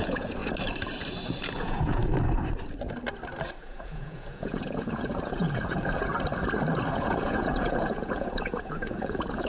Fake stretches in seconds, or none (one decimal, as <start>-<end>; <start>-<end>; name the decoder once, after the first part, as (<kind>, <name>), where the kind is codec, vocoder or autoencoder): 0.0-0.4 (vocoder, Vocos); 1.6-2.0; 3.6-6.1; 6.9-9.5